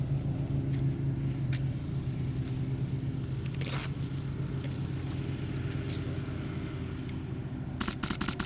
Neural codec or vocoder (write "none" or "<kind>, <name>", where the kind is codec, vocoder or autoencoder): none